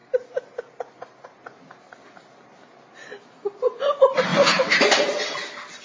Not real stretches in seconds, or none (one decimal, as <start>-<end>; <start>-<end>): none